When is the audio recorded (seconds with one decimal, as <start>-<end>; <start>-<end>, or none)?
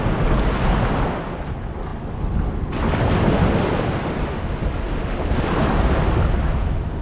0.0-7.0